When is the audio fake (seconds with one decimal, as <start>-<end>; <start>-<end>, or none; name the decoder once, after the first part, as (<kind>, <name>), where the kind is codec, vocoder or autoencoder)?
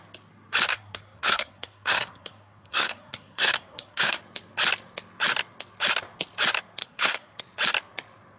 0.7-4.2 (codec, SNAC); 6.8-7.4